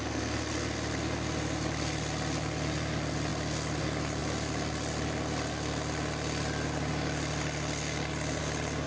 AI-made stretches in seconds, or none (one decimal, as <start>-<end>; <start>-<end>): none